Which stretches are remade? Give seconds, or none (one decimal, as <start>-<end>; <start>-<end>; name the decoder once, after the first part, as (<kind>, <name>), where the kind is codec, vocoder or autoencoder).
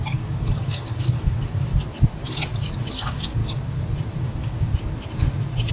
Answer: 0.0-1.7 (codec, DAC); 2.8-3.4; 4.2-4.7